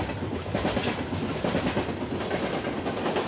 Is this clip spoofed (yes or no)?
no